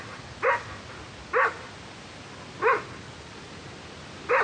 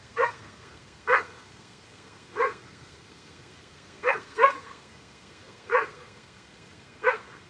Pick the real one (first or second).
first